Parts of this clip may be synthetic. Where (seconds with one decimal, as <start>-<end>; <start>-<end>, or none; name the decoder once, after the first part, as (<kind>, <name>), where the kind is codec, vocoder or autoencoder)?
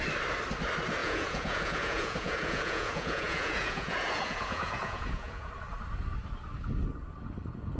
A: 1.0-5.5 (vocoder, Vocos)